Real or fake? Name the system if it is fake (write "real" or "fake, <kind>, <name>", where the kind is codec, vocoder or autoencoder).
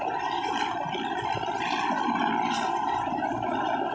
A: real